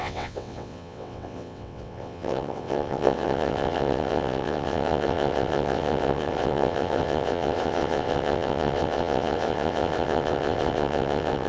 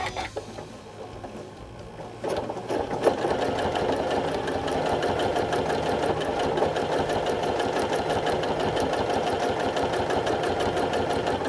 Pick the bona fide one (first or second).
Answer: second